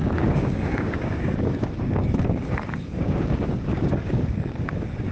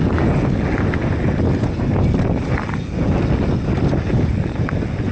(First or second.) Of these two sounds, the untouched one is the second